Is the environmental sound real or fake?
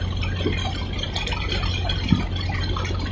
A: real